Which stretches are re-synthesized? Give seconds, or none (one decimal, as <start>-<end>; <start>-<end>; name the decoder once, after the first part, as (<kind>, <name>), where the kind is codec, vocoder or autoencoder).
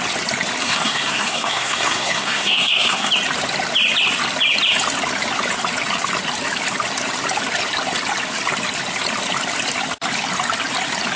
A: 0.6-3.1 (codec, SNAC)